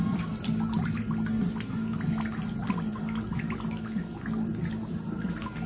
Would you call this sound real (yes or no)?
yes